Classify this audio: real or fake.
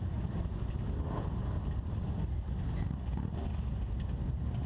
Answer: real